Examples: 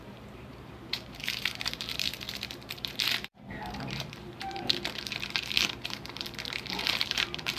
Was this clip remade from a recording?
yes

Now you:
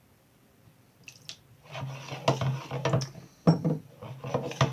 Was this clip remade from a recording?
no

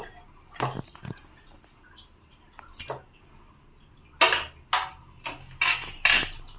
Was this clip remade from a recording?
no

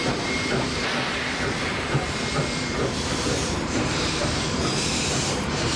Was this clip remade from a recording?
yes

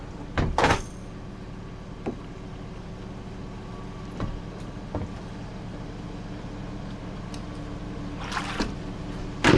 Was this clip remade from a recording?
no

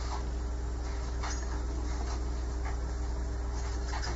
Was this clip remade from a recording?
no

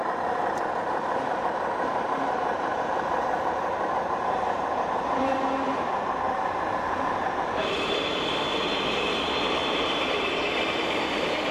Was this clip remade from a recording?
yes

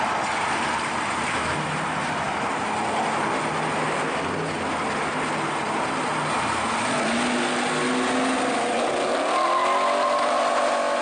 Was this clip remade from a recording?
no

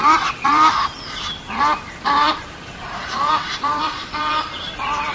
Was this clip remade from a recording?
yes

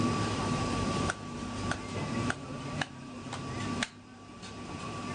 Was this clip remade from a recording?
yes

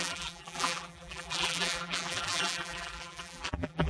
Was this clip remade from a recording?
yes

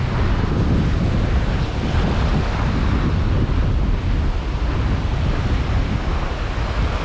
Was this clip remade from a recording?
no